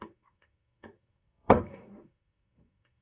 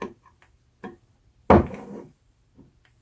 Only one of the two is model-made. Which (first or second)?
first